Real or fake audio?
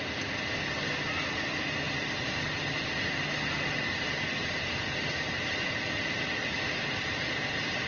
real